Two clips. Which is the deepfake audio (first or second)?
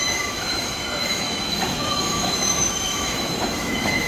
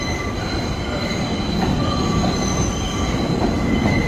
first